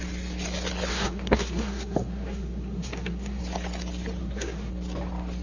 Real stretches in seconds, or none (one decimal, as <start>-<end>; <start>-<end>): 0.0-0.9; 3.4-4.2; 4.7-5.4